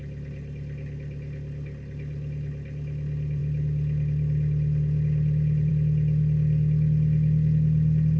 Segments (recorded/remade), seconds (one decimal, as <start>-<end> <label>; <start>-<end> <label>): 0.0-8.2 recorded